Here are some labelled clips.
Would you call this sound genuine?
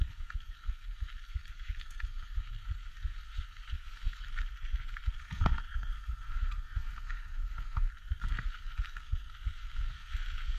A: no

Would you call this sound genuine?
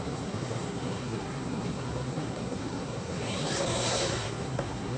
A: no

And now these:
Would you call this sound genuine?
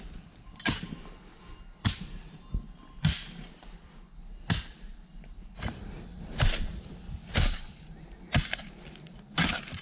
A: yes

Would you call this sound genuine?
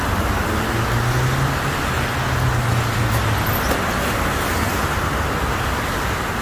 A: yes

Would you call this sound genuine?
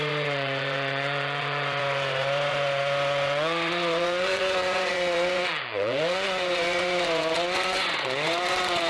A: no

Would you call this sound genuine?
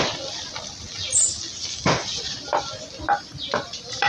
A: yes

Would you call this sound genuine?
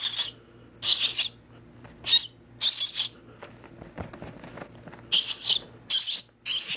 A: yes